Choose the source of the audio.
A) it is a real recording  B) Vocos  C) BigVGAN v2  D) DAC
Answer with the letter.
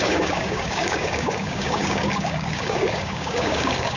D